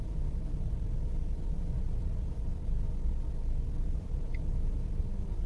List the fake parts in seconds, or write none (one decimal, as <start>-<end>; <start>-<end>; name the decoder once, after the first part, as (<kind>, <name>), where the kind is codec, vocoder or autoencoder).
0.0-2.5 (vocoder, BigVGAN v2); 3.8-5.5